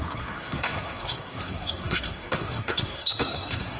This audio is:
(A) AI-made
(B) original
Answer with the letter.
A